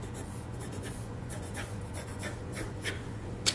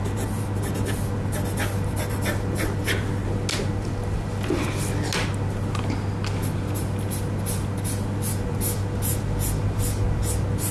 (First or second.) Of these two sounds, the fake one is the first